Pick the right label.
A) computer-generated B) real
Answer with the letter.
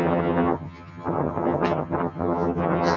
A